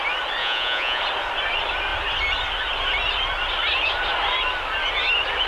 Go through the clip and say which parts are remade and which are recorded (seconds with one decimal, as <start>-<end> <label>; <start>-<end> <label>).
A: 0.0-0.4 recorded; 0.4-1.0 remade; 1.0-5.5 recorded